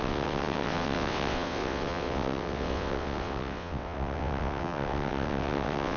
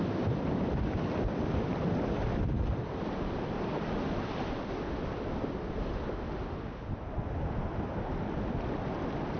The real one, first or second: second